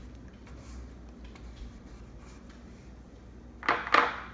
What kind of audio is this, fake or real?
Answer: real